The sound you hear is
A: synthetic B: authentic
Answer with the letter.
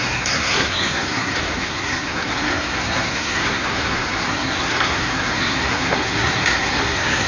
A